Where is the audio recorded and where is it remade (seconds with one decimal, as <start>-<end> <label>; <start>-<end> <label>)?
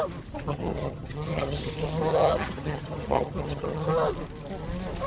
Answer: 0.0-0.5 recorded; 0.5-1.7 remade; 1.7-2.1 recorded; 2.1-3.9 remade; 3.9-5.1 recorded